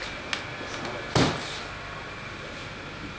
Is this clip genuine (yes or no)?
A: yes